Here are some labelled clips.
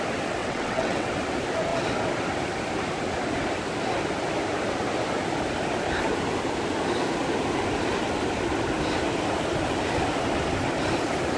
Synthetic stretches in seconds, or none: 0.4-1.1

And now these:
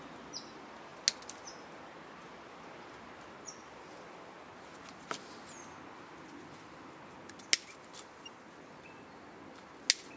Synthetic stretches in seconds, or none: none